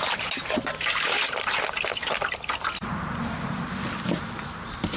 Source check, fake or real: real